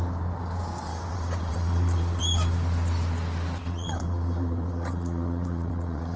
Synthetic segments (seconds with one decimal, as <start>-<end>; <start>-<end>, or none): 0.9-2.2; 3.6-6.2